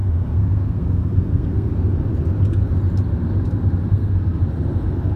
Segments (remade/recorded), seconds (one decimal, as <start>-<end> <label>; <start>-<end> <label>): 0.0-1.7 remade; 1.7-3.9 recorded; 3.9-4.4 remade; 4.4-5.2 recorded